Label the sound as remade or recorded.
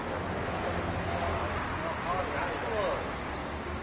recorded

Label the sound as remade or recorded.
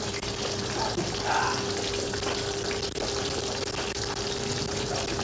recorded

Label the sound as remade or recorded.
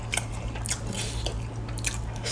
recorded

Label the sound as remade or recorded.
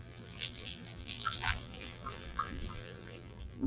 remade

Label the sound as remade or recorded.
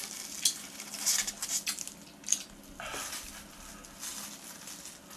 recorded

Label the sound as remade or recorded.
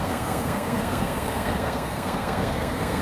remade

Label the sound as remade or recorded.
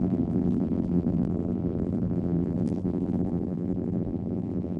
remade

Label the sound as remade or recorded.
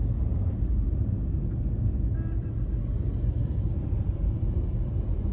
recorded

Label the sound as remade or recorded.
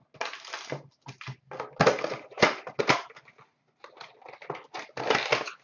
recorded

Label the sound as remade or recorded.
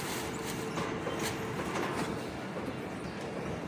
recorded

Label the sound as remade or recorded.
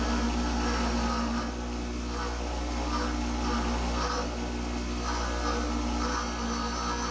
recorded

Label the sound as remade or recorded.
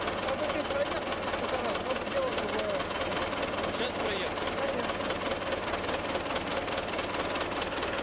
recorded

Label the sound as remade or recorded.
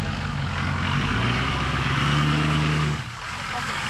remade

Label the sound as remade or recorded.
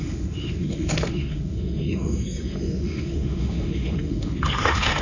remade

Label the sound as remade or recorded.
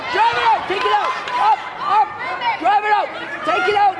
recorded